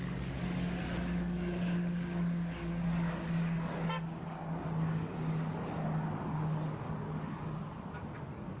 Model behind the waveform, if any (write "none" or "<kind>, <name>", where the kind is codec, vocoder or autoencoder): codec, DAC